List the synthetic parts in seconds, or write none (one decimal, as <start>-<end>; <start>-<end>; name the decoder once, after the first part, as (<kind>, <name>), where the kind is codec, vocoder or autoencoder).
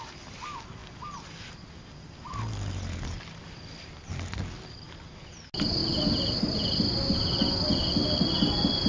none